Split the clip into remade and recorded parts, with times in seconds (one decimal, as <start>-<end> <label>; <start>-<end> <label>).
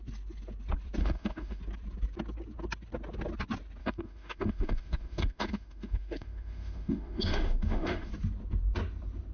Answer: 0.0-1.0 recorded; 1.0-1.6 remade; 1.6-3.8 recorded; 3.8-8.1 remade; 8.1-9.3 recorded